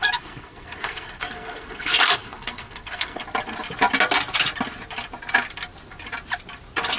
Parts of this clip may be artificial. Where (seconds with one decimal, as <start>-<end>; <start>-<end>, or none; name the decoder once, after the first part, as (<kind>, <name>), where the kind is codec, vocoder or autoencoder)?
0.0-3.2 (codec, SNAC)